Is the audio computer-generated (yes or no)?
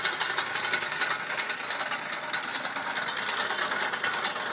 no